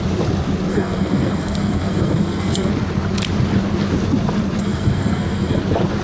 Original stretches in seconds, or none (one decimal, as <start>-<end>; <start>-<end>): 0.0-0.7; 2.7-4.6; 5.6-6.0